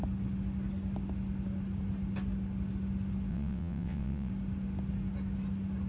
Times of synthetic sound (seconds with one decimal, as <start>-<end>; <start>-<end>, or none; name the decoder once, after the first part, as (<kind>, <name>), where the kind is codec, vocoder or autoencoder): 3.3-4.3 (vocoder, WaveNeXt)